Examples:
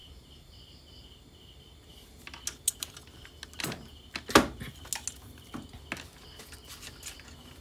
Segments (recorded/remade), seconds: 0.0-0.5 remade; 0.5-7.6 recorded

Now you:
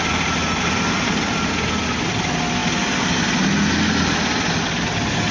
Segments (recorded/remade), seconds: 0.0-5.3 recorded

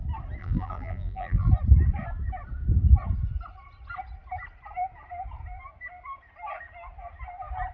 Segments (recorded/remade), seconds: 0.0-0.4 recorded; 0.4-1.5 remade; 1.5-7.7 recorded

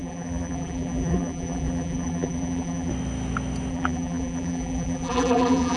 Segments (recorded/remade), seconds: 0.0-2.9 remade; 2.9-3.7 recorded; 3.7-5.8 remade

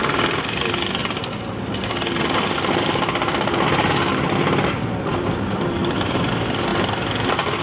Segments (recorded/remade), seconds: 0.0-1.0 remade; 1.0-3.9 recorded; 3.9-5.8 remade; 5.8-6.3 recorded; 6.3-6.7 remade; 6.7-7.6 recorded